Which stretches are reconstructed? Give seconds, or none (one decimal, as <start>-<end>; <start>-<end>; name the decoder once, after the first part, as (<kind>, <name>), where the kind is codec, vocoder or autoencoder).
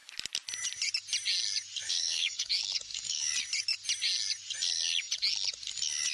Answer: 1.8-3.3 (codec, DAC)